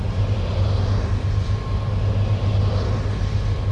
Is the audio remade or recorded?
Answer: recorded